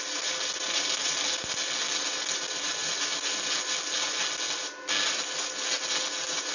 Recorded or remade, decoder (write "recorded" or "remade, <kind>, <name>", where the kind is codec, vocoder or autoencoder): recorded